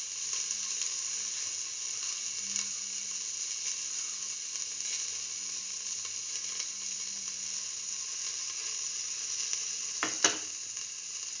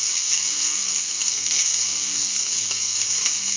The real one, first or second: first